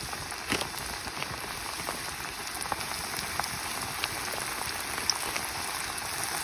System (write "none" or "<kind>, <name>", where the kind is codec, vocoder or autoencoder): none